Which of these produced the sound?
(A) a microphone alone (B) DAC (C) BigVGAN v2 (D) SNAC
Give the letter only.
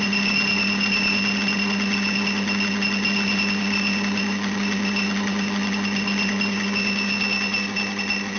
A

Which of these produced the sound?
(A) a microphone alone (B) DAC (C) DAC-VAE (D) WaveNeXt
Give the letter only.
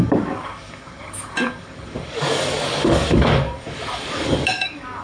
B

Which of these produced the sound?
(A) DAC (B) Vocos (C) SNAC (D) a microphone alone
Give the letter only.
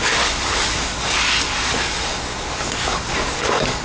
A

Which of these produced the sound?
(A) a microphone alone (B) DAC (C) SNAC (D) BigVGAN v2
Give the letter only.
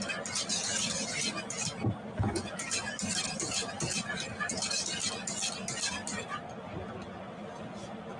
A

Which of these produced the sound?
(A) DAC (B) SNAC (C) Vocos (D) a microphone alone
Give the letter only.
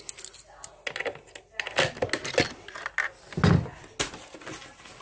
D